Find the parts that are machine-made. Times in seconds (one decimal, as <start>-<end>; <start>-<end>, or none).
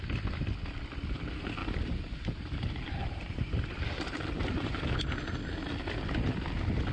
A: 1.6-4.8